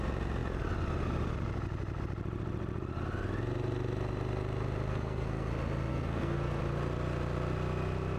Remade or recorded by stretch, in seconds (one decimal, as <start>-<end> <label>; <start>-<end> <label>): 0.0-4.9 recorded; 4.9-5.5 remade; 5.5-5.9 recorded; 5.9-6.6 remade; 6.6-8.2 recorded